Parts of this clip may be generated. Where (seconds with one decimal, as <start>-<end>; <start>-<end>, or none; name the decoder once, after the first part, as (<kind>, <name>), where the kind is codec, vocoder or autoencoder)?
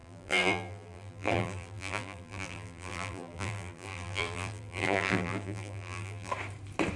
0.0-6.3 (vocoder, BigVGAN v2)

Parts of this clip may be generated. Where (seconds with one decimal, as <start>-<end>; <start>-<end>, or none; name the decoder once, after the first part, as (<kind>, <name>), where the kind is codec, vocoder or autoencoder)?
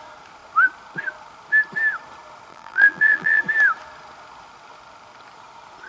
2.5-3.4 (vocoder, BigVGAN v2)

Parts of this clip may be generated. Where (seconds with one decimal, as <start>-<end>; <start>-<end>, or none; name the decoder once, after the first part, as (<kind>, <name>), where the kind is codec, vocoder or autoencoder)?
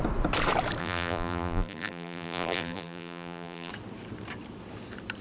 0.8-3.7 (vocoder, BigVGAN v2)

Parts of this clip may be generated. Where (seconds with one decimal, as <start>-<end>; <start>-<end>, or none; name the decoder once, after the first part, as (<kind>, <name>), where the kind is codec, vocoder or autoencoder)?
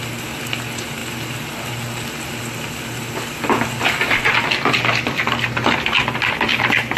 0.0-7.0 (vocoder, BigVGAN v2)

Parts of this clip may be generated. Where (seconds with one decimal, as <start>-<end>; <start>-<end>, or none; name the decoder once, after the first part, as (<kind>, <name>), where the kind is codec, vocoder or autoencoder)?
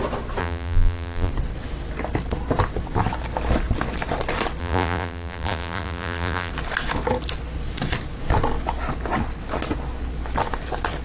0.4-1.3 (vocoder, BigVGAN v2); 4.6-6.5